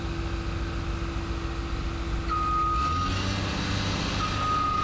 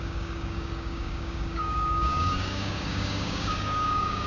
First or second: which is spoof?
second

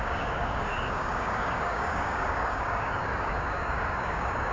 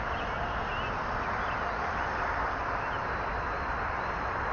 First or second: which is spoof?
first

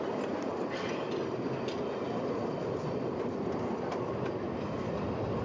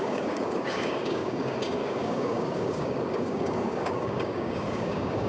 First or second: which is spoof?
second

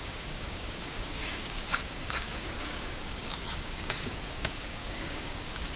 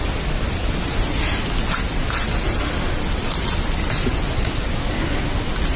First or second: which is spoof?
first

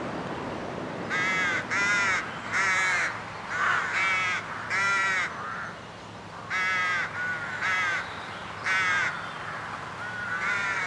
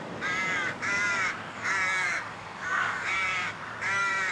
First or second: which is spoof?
second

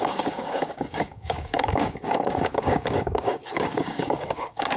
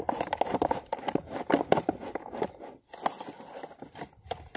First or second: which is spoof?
first